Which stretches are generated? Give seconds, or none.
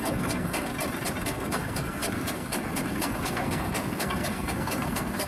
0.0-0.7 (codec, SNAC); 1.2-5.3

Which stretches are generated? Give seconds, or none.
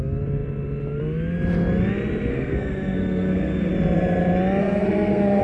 2.3-3.7 (codec, SNAC); 4.6-5.4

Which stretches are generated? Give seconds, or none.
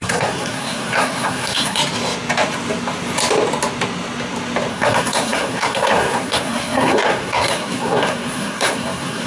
0.0-1.8 (codec, SNAC); 4.7-9.3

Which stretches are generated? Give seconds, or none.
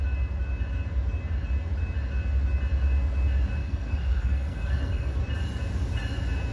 3.6-5.1 (codec, SNAC)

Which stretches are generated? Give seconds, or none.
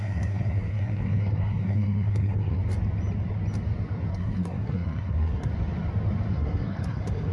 0.0-2.6 (codec, SNAC); 4.1-5.5; 6.3-7.3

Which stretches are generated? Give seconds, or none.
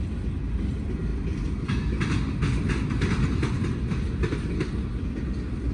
none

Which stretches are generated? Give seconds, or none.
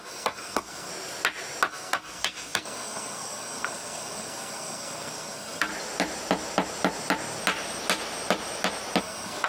0.0-0.9 (codec, SNAC); 1.7-5.7; 9.0-9.5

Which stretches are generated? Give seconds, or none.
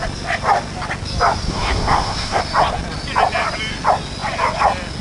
1.5-2.4 (codec, SNAC)